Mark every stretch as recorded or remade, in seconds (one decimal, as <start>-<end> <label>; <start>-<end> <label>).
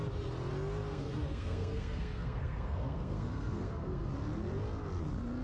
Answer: 0.0-0.9 recorded; 0.9-4.1 remade; 4.1-5.4 recorded